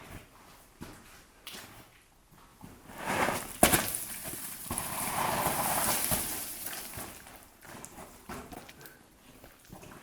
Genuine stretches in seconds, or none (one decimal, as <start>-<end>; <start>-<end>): 0.0-4.2; 9.2-10.0